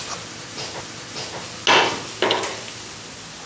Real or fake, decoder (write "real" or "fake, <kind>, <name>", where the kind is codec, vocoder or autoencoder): real